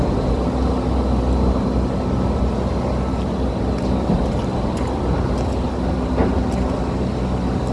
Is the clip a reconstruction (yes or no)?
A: no